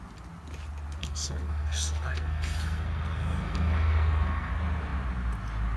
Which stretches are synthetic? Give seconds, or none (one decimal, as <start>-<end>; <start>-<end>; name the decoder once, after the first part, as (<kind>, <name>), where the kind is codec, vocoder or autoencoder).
1.0-4.5 (codec, SNAC)